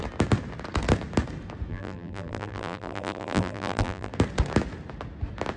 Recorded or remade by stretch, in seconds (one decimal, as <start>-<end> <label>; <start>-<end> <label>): 0.0-1.7 recorded; 1.7-4.1 remade; 4.1-5.6 recorded